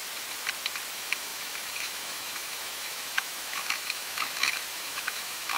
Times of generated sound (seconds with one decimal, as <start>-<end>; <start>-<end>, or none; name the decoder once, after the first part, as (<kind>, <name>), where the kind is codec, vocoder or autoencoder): 0.9-5.6 (autoencoder, DAC-VAE)